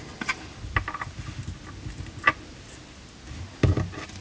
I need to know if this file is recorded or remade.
recorded